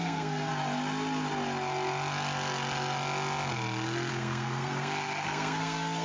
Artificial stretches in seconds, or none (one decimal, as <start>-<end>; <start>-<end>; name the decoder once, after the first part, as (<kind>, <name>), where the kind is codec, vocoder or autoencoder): 0.0-0.5 (codec, SNAC); 4.1-6.0

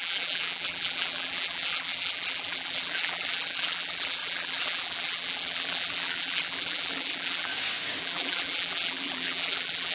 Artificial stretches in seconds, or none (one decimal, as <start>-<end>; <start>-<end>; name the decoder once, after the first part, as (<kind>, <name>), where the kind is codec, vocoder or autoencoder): 0.0-7.5 (vocoder, BigVGAN v2); 8.0-9.9